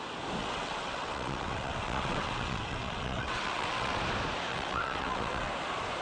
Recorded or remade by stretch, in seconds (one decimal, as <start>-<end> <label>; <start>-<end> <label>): 0.0-0.4 recorded; 0.4-4.0 remade; 4.0-4.5 recorded; 4.5-5.5 remade; 5.5-6.0 recorded

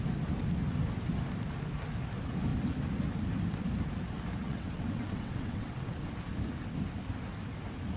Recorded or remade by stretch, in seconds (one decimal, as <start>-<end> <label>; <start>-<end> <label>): 0.0-4.4 recorded; 4.4-5.9 remade; 5.9-8.0 recorded

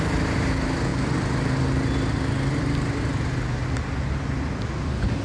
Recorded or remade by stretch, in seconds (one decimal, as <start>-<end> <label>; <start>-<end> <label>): 0.0-5.2 recorded

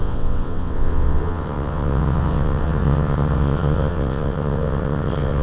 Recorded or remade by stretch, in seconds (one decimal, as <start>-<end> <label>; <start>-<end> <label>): 0.0-5.4 remade

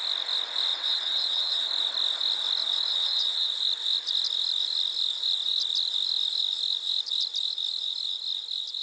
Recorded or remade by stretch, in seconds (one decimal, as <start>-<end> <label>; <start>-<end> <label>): 0.0-0.7 recorded; 0.7-1.7 remade; 1.7-2.9 recorded; 2.9-3.5 remade; 3.5-8.8 recorded

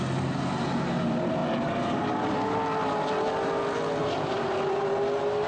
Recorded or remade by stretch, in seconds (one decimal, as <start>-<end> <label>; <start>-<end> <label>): 0.0-5.5 recorded

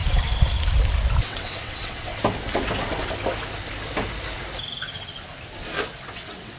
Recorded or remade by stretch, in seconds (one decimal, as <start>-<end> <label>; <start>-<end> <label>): 0.0-1.2 recorded; 1.2-2.1 remade; 2.1-6.1 recorded; 6.1-6.6 remade

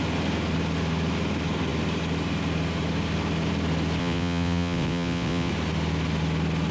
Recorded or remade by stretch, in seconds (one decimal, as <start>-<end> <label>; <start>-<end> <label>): 0.0-4.0 recorded; 4.0-5.5 remade; 5.5-6.7 recorded